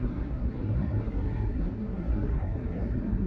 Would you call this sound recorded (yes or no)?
no